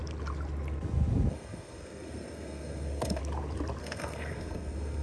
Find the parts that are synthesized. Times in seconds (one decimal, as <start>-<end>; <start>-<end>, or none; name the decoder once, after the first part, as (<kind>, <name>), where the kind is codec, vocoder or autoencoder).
1.3-3.2 (codec, SNAC); 3.8-5.0